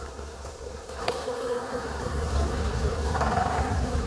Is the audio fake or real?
fake